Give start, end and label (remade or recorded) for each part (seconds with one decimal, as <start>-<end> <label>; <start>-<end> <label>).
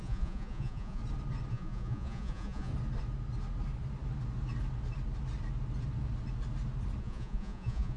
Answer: 0.0-1.0 remade; 1.0-1.5 recorded; 1.5-2.7 remade; 2.7-7.0 recorded; 7.0-8.0 remade